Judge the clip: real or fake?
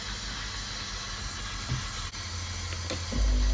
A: real